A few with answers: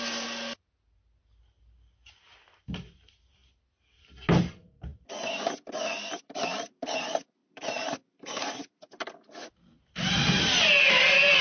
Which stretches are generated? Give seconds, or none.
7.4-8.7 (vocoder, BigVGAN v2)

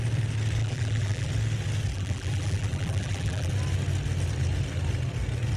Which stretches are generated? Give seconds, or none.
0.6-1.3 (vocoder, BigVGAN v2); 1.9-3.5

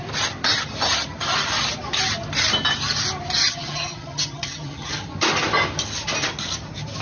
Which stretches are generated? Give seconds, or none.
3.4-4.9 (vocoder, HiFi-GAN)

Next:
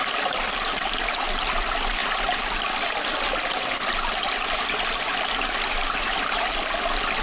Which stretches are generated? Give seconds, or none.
none

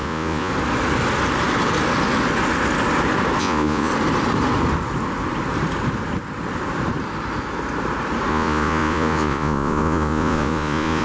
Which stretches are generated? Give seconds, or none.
0.0-0.5 (vocoder, Vocos); 3.4-3.9; 8.3-11.0

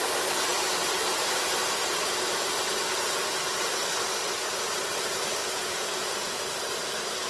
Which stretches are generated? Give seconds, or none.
5.4-6.4 (vocoder, Vocos)

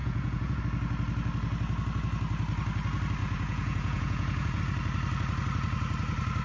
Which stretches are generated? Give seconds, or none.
0.0-0.6 (vocoder, Vocos); 3.2-4.6

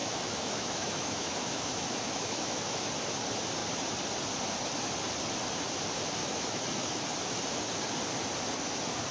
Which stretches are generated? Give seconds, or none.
0.0-2.9 (autoencoder, DAC-VAE); 6.2-7.0